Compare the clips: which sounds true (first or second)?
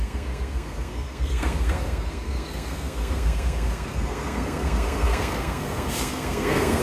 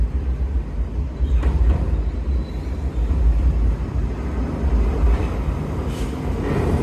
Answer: second